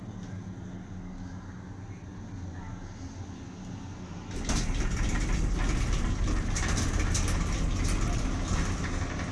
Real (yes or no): yes